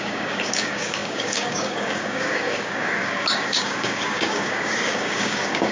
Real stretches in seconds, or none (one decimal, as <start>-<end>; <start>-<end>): none